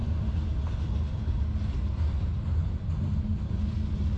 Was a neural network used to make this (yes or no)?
no